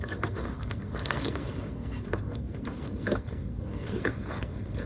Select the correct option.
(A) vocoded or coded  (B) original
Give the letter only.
A